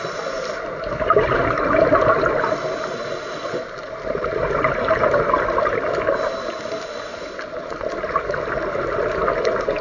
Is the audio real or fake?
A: real